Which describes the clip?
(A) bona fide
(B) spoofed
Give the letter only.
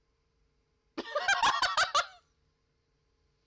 A